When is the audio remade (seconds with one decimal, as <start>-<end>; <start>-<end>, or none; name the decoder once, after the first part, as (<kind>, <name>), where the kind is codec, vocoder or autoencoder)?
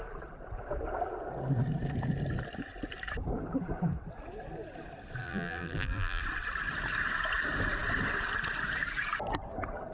5.2-6.2 (vocoder, BigVGAN v2)